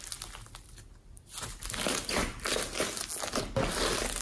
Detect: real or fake real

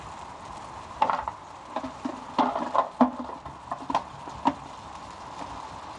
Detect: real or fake real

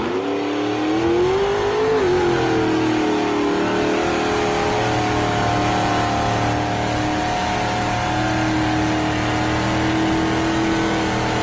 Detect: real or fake real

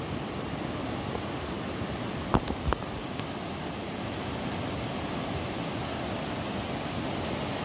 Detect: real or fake real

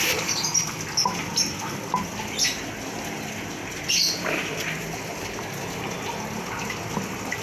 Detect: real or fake real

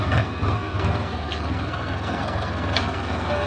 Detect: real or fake fake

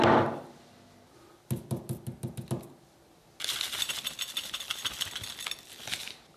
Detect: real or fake real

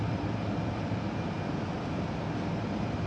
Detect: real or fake real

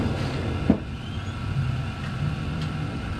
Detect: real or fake real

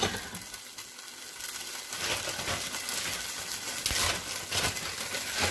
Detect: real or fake real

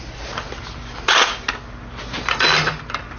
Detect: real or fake real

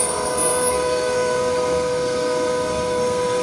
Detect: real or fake fake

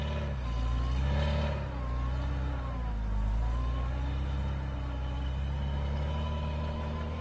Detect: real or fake real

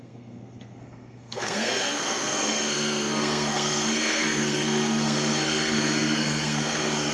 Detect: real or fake fake